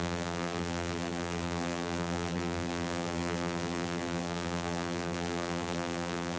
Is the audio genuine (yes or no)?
no